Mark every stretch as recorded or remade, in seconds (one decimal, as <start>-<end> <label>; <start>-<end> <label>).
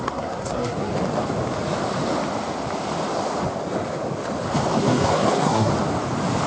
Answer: 0.0-0.9 remade; 0.9-4.8 recorded; 4.8-5.7 remade; 5.7-6.5 recorded